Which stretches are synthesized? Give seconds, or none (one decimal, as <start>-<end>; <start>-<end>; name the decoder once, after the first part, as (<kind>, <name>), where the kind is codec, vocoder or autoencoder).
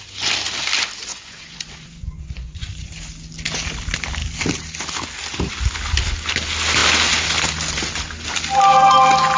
1.1-2.9 (vocoder, Vocos)